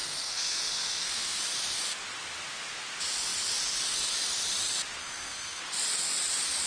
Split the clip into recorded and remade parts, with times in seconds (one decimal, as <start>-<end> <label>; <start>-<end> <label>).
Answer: 0.0-1.4 remade; 1.4-5.0 recorded; 5.0-5.6 remade; 5.6-6.7 recorded